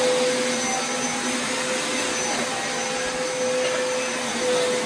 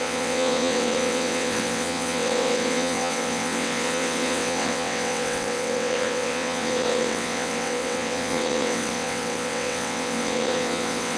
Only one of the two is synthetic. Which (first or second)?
second